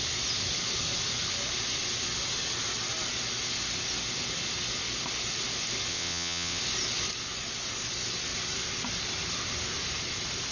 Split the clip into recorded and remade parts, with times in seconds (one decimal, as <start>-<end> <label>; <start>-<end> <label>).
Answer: 0.0-5.9 recorded; 5.9-6.6 remade; 6.6-10.5 recorded